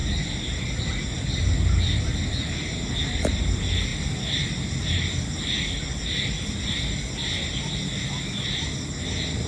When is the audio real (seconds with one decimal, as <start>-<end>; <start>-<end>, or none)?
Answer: 0.0-9.5